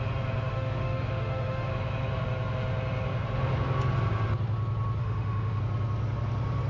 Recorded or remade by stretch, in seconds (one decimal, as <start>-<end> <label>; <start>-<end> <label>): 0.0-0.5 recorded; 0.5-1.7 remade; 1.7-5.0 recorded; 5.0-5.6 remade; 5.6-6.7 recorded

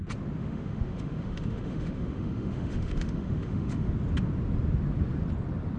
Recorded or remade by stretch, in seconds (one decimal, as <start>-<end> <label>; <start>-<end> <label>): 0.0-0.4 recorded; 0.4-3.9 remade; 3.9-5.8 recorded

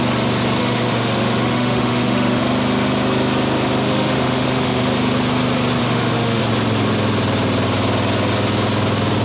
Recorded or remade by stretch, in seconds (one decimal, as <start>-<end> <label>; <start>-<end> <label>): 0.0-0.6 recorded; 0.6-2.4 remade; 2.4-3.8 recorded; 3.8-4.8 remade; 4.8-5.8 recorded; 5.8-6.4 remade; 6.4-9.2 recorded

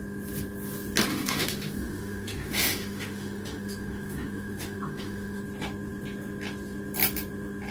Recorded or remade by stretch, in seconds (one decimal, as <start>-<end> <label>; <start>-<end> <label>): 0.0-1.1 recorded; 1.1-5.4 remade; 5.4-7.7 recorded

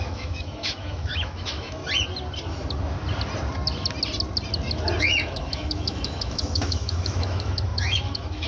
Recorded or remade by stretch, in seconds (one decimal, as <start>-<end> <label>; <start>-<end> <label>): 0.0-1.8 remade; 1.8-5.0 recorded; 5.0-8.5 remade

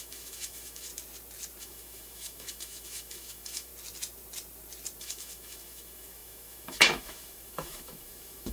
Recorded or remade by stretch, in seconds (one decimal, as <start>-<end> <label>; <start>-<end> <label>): 0.0-0.9 remade; 0.9-1.6 recorded; 1.6-3.7 remade; 3.7-5.0 recorded; 5.0-8.5 remade

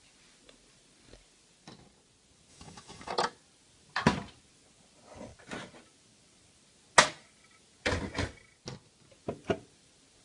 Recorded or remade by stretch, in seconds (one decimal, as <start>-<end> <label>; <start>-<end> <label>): 0.0-2.5 recorded; 2.5-3.1 remade; 3.1-10.2 recorded

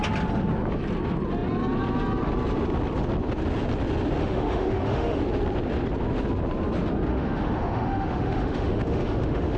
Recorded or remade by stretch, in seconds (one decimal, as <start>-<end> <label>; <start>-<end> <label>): 0.0-4.2 recorded; 4.2-5.2 remade; 5.2-7.1 recorded; 7.1-9.6 remade